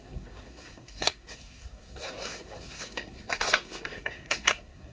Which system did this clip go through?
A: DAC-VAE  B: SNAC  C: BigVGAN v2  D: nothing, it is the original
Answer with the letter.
B